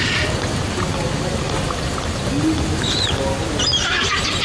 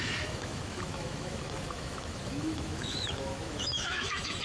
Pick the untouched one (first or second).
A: first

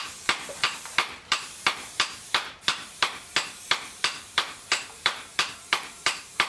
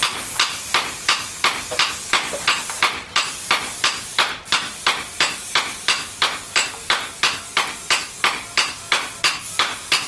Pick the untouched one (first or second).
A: second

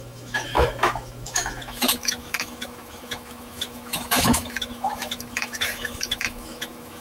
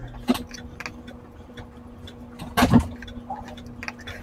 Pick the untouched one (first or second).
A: second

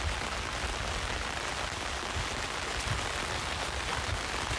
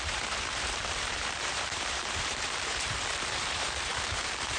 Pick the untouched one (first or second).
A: first